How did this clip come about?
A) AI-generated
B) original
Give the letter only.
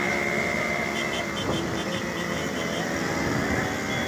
B